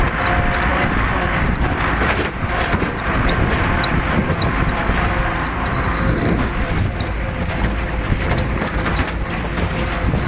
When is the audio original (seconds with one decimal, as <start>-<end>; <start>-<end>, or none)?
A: 0.0-0.7; 1.8-4.2; 5.1-10.3